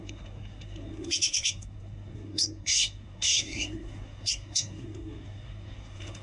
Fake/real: fake